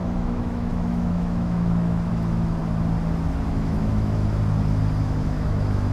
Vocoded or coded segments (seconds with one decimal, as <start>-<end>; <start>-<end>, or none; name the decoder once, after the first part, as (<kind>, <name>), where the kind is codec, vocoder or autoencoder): 0.0-2.6 (autoencoder, DAC-VAE); 3.5-4.2; 5.0-5.9